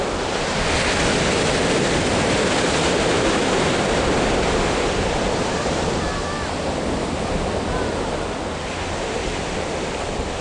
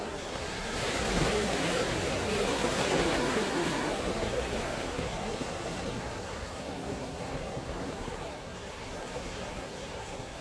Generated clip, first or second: second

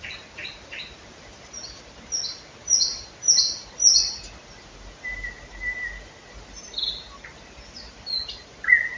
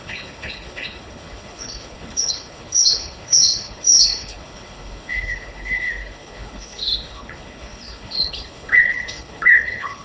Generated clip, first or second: second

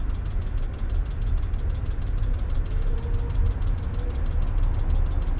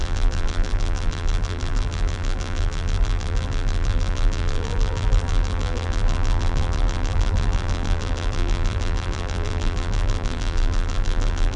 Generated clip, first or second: second